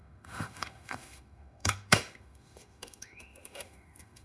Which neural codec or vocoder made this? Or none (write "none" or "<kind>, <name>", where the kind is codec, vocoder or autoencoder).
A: autoencoder, DAC-VAE